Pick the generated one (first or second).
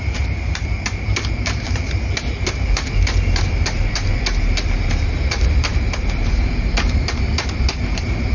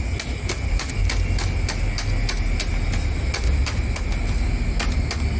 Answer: first